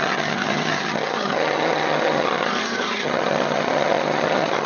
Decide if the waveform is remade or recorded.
remade